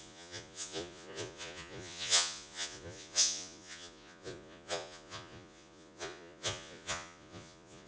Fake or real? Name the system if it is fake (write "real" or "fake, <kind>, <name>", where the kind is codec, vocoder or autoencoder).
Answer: fake, vocoder, Vocos